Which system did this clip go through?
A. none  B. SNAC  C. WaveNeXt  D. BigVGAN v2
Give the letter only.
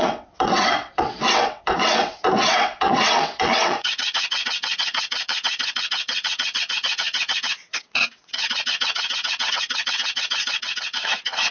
C